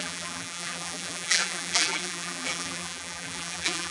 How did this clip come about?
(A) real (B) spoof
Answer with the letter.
B